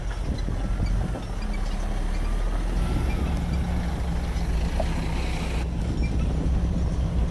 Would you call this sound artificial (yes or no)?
no